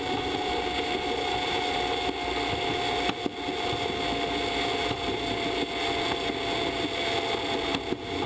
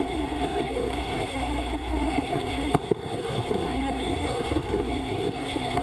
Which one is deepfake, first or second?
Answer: second